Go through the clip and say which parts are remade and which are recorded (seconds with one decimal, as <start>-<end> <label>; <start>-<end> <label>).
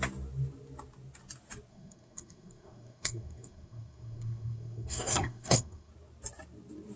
0.0-1.7 recorded; 1.7-5.9 remade; 5.9-7.0 recorded